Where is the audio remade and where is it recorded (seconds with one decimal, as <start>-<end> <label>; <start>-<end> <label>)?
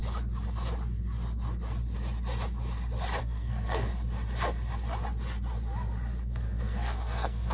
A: 0.0-3.2 recorded; 3.2-3.9 remade; 3.9-6.2 recorded; 6.2-7.5 remade